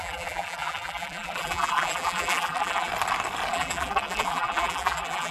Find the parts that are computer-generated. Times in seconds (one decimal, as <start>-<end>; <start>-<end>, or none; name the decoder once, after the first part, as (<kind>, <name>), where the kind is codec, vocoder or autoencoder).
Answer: 0.0-2.9 (vocoder, BigVGAN v2); 3.5-5.3